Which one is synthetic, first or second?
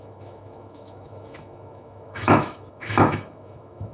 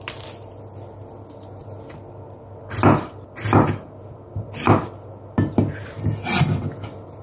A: first